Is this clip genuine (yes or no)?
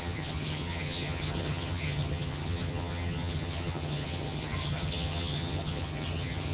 no